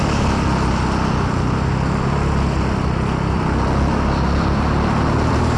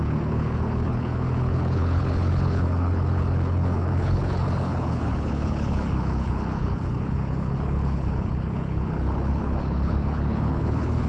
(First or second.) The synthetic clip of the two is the second